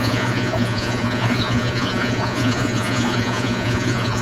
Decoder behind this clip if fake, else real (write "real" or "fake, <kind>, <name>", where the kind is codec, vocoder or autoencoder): fake, vocoder, Vocos